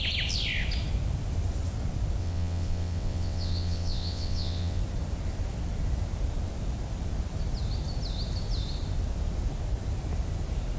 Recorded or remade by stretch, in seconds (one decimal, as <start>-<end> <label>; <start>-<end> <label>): 0.0-2.2 recorded; 2.2-4.8 remade; 4.8-10.8 recorded